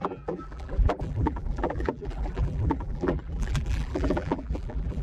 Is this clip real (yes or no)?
no